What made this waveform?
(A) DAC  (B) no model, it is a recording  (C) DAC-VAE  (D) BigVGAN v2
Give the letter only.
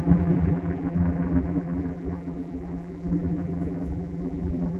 D